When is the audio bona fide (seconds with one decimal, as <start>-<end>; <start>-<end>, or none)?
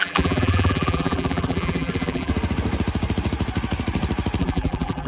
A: 2.3-4.4